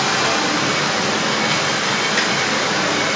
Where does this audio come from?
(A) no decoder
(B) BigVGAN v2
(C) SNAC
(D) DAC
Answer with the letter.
A